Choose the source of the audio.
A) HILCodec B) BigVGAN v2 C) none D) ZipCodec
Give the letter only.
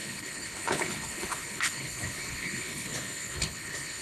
A